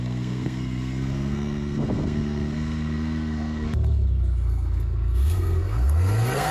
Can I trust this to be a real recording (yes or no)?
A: no